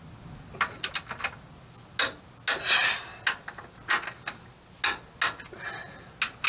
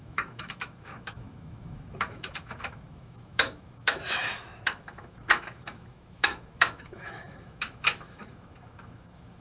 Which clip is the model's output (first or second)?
second